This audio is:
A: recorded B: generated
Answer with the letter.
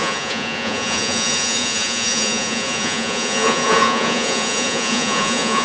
B